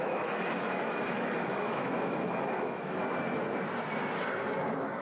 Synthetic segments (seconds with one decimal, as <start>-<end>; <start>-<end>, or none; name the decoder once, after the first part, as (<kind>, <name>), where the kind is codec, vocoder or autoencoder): 0.0-3.0 (autoencoder, DAC-VAE); 4.6-5.0